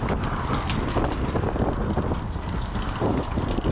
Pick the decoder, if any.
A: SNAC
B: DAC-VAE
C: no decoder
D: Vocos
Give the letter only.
C